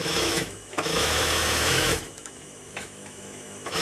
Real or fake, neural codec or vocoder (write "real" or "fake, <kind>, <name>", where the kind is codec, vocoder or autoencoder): fake, autoencoder, DAC-VAE